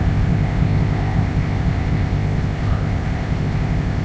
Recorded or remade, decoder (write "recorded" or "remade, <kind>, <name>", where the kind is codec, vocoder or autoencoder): remade, codec, ZipCodec